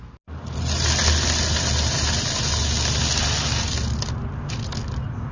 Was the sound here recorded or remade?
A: recorded